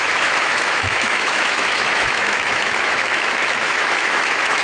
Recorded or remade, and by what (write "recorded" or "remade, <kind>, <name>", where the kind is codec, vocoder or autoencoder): remade, autoencoder, DAC-VAE